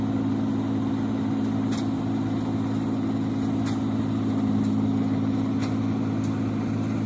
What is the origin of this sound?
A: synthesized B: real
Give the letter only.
B